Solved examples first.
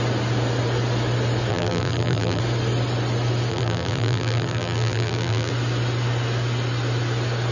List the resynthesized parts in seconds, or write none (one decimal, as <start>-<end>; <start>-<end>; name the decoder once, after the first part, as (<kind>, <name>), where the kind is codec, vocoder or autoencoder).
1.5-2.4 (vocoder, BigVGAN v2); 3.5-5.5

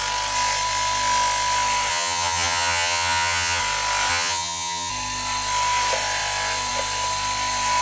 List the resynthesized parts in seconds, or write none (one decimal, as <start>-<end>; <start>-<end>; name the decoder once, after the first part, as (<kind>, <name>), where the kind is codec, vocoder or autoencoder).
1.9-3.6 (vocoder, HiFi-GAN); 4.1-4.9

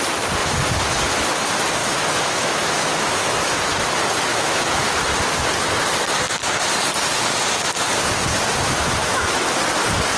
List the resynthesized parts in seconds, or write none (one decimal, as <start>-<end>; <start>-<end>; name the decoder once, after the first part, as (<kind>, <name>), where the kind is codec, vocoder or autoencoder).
1.8-3.5 (autoencoder, DAC-VAE); 4.3-4.9; 9.0-9.6

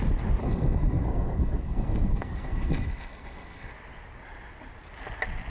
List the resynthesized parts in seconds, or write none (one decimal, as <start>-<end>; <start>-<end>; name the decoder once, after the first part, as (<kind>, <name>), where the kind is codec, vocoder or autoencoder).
0.4-3.7 (codec, SNAC)